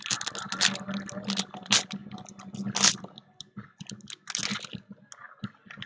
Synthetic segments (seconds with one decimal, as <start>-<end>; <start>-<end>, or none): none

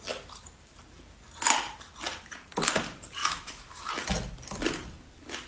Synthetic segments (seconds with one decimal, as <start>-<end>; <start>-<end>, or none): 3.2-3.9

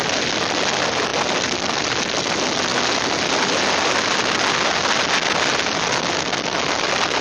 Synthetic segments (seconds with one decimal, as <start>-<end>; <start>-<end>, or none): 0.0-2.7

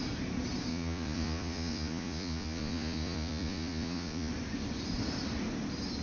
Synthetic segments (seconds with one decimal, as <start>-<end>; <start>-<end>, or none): 0.7-4.3

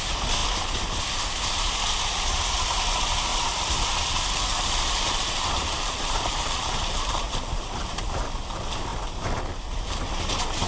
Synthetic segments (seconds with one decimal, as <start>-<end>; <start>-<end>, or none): 3.3-8.4